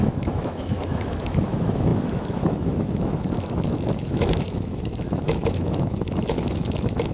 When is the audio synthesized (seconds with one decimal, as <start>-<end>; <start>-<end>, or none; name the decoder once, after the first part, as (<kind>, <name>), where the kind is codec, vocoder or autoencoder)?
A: 0.0-7.1 (autoencoder, DAC-VAE)